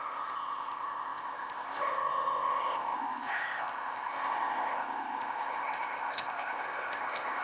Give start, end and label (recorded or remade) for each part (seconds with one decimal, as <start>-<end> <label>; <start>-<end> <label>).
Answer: 0.0-7.4 remade